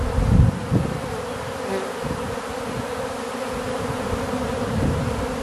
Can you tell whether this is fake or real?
real